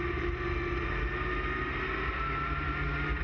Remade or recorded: recorded